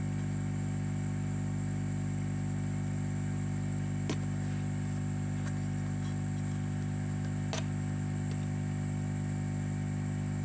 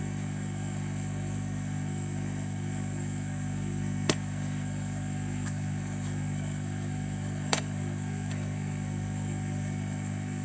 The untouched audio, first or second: first